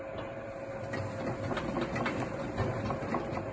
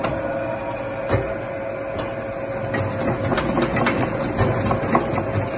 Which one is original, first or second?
second